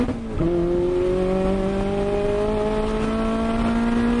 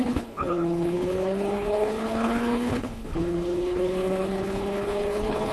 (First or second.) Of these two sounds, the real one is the first